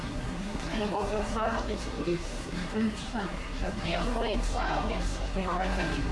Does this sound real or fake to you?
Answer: fake